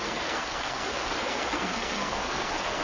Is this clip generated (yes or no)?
yes